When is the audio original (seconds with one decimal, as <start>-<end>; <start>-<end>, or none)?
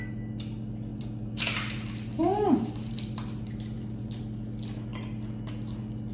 0.0-0.9; 4.2-6.1